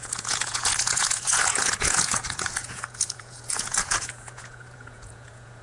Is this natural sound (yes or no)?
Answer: no